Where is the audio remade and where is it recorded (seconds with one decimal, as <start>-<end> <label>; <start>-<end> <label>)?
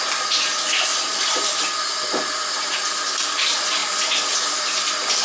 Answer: 0.0-5.2 recorded